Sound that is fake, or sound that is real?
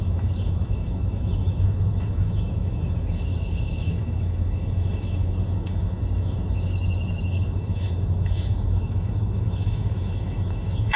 fake